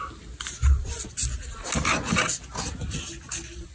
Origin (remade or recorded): recorded